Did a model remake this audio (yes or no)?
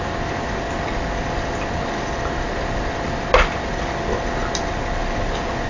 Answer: no